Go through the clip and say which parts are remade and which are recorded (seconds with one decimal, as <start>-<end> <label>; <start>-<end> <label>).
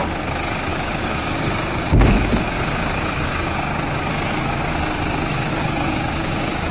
0.0-0.7 recorded; 0.7-4.7 remade; 4.7-5.5 recorded; 5.5-6.7 remade